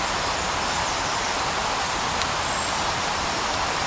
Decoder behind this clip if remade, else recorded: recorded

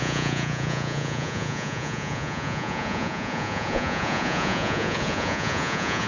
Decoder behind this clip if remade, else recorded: remade, vocoder, Vocos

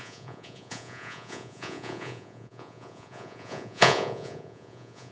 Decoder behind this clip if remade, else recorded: remade, vocoder, Vocos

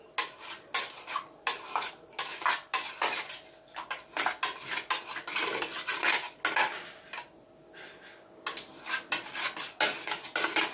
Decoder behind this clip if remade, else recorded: recorded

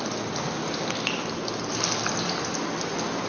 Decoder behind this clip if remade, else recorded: recorded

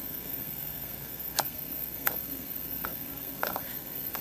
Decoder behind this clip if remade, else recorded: remade, codec, SNAC